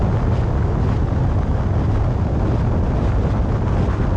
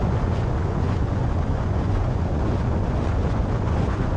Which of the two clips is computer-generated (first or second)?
second